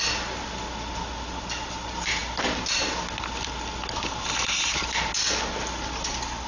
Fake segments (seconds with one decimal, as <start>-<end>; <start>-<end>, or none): none